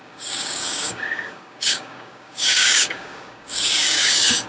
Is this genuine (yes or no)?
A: no